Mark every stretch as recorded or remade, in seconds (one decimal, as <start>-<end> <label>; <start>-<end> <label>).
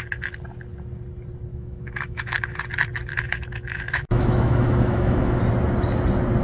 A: 0.0-1.5 recorded; 1.5-2.6 remade; 2.6-3.1 recorded; 3.1-5.4 remade; 5.4-6.4 recorded